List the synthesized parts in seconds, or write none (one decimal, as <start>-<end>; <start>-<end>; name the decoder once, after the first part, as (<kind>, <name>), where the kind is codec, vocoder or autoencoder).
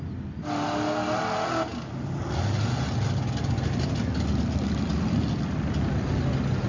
none